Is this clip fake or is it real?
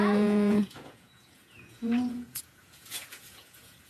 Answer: fake